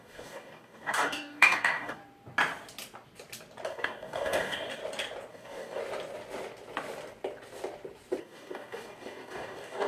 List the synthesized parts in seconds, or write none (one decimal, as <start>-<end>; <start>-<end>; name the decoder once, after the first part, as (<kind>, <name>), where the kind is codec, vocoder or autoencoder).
0.0-2.0 (codec, DAC); 3.7-4.8; 5.3-5.8; 8.2-9.9